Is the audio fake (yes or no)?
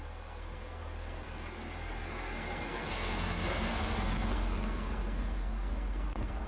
yes